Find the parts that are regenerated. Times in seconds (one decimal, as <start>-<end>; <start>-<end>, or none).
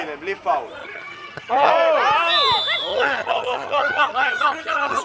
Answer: 0.8-1.7; 2.9-5.0